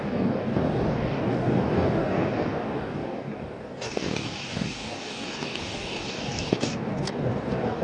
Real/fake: fake